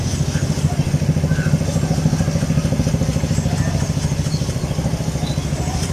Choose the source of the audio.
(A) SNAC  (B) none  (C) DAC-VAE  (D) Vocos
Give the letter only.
B